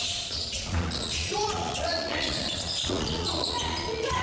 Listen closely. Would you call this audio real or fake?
fake